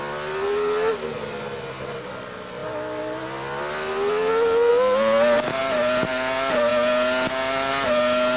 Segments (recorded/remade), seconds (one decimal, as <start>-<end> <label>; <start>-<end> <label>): 0.0-8.4 recorded